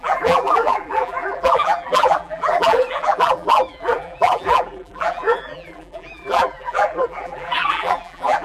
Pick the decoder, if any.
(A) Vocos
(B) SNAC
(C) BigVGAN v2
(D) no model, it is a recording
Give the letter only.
C